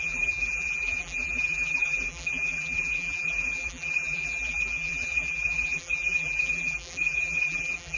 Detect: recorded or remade remade